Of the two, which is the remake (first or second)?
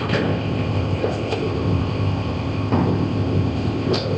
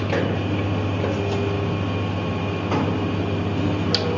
first